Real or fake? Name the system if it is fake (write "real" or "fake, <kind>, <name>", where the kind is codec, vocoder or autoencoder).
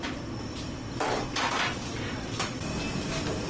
fake, vocoder, BigVGAN v2